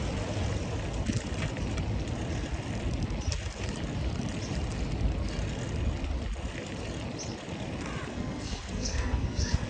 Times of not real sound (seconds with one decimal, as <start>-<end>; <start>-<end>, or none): 8.1-9.7